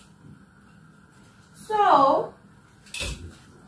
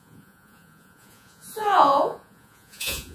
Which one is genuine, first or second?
first